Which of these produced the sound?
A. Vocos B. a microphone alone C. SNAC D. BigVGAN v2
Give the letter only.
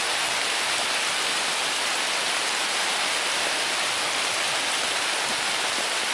B